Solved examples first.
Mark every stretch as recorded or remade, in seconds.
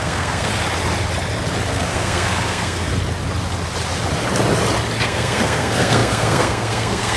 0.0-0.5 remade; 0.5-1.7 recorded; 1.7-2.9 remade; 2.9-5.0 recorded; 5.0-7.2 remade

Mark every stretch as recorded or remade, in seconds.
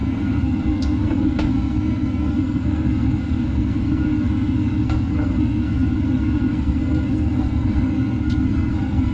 0.0-9.1 remade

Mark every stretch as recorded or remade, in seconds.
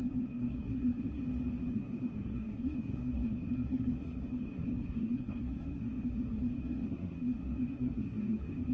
0.0-1.2 remade; 1.2-1.7 recorded; 1.7-8.7 remade